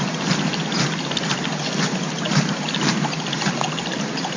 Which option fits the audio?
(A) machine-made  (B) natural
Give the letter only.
B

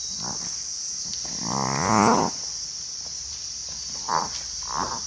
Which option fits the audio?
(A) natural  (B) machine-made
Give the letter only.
A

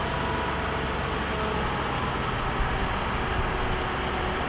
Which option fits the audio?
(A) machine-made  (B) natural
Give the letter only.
B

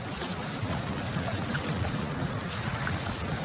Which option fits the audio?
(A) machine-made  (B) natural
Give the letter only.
A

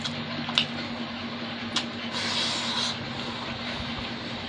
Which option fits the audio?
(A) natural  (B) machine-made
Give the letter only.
A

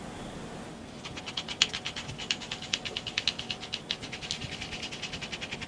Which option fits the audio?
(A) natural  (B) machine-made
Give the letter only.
A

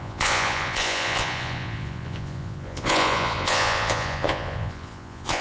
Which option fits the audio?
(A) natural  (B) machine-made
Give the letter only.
B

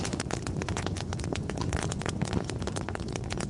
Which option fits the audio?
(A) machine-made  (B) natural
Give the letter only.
A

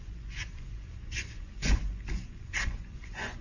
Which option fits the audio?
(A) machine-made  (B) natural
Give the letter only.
A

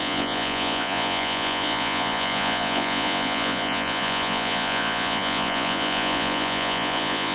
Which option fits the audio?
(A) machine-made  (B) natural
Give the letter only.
A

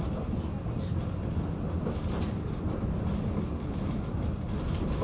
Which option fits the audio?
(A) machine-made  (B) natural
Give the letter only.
B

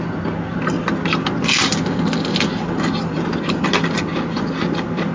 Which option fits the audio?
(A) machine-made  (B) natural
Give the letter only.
B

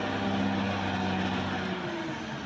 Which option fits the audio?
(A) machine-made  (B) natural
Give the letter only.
B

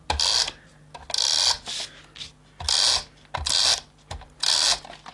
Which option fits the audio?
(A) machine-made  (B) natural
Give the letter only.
B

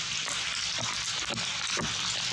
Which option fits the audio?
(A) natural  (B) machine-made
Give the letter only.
A